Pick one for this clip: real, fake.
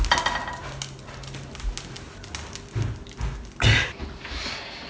real